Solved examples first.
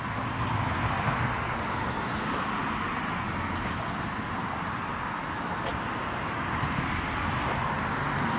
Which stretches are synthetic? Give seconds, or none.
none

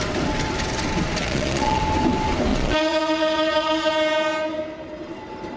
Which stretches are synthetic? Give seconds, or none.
1.2-1.8 (vocoder, Vocos); 2.5-3.9

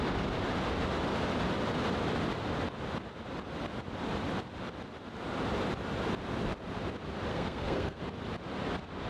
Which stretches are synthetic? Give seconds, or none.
7.3-8.0 (codec, SNAC)